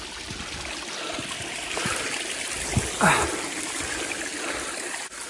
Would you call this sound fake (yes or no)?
no